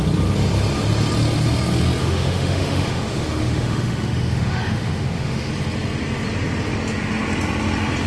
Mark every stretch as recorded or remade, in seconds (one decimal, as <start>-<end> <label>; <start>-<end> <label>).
0.0-2.0 recorded; 2.0-5.5 remade; 5.5-8.1 recorded